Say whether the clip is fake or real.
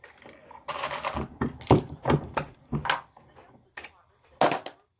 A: real